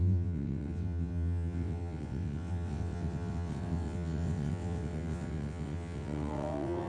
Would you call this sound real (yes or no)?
no